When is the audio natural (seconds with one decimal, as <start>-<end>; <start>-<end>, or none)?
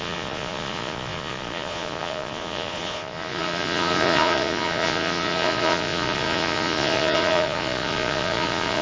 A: none